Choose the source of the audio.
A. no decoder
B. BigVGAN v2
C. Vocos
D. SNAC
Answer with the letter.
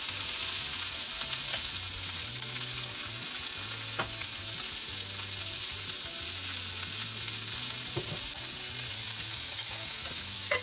A